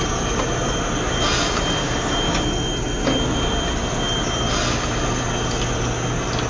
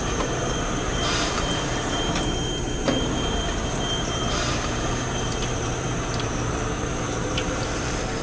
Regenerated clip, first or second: second